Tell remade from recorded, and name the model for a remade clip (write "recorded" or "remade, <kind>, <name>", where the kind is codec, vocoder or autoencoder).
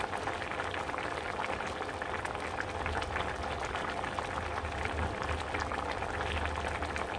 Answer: recorded